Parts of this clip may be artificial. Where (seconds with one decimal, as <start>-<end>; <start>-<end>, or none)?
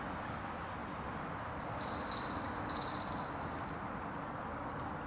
none